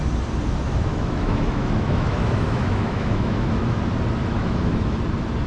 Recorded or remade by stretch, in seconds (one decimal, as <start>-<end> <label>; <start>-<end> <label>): 0.0-0.9 recorded; 0.9-3.8 remade; 3.8-4.2 recorded; 4.2-5.0 remade; 5.0-5.5 recorded